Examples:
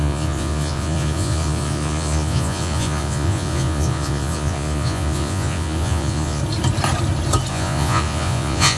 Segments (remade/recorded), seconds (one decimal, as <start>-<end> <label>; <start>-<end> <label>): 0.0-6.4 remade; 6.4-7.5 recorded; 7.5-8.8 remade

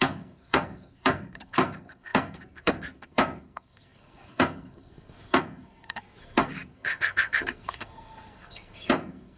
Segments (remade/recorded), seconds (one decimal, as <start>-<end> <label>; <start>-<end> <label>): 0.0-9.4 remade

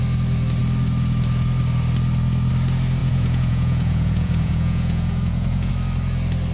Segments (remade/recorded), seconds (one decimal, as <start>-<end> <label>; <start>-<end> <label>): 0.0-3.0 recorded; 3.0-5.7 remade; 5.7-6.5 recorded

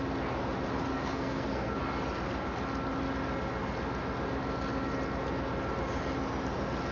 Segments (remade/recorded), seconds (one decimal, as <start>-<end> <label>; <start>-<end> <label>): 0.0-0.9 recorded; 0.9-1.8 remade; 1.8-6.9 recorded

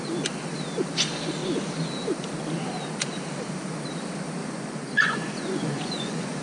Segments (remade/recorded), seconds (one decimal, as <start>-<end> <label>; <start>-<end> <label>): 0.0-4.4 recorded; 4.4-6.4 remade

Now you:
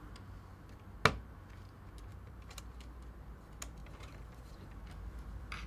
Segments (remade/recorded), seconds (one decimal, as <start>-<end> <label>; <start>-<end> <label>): 0.0-2.1 recorded; 2.1-2.6 remade; 2.6-3.8 recorded; 3.8-4.8 remade; 4.8-5.7 recorded

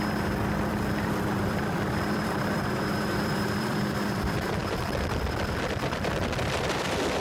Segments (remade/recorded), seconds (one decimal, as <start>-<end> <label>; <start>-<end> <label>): 0.0-7.2 remade